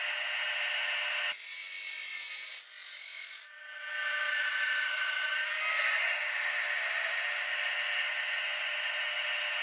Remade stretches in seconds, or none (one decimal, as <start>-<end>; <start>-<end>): 4.3-5.5